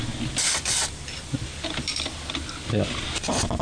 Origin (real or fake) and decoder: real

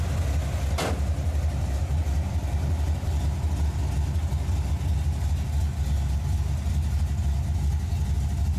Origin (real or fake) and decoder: real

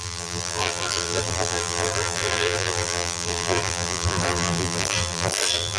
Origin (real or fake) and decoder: fake, vocoder, BigVGAN v2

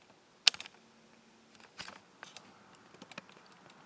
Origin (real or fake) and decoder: real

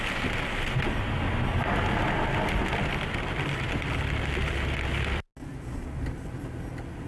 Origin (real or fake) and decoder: real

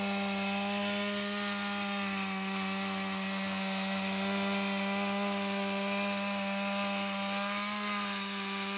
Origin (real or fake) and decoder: real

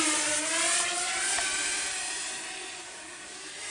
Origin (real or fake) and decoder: fake, vocoder, BigVGAN v2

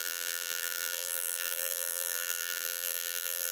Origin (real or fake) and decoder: fake, vocoder, BigVGAN v2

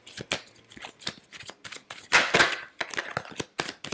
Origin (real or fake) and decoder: real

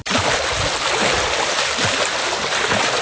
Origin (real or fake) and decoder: fake, vocoder, BigVGAN v2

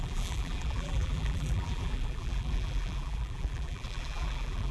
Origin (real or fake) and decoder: fake, vocoder, BigVGAN v2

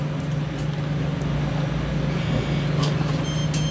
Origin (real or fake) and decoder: real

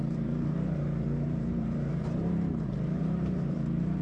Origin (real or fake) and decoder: fake, vocoder, BigVGAN v2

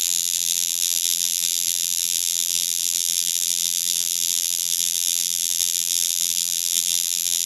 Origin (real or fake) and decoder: fake, vocoder, BigVGAN v2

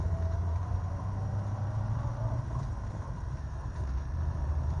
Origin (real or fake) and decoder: fake, vocoder, BigVGAN v2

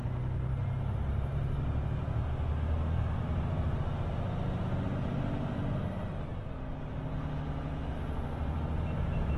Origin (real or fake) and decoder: real